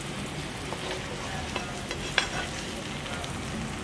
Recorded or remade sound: recorded